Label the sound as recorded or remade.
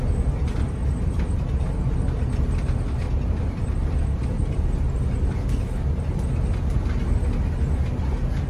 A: recorded